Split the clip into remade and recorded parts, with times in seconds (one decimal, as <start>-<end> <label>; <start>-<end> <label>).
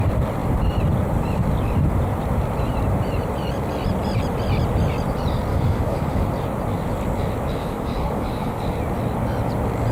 0.0-5.5 recorded; 5.5-6.3 remade; 6.3-7.6 recorded; 7.6-8.6 remade; 8.6-9.9 recorded